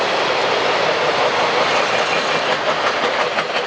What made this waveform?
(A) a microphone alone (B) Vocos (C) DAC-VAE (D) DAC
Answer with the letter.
A